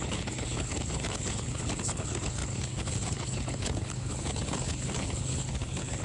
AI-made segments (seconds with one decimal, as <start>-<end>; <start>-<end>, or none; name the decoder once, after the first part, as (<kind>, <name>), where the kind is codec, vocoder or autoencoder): 0.0-6.0 (codec, HILCodec)